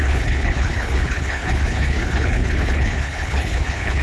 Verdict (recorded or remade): remade